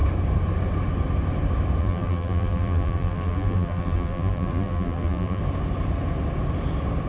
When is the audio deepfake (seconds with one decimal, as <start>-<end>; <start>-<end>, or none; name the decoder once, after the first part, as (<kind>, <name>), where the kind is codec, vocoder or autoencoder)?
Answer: 1.8-5.4 (vocoder, BigVGAN v2)